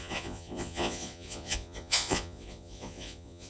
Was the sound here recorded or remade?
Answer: remade